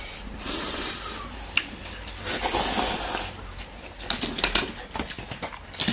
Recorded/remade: recorded